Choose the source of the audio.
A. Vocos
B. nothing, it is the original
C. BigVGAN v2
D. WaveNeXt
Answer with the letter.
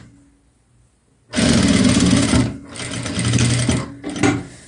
B